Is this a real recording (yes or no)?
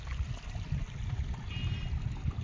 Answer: yes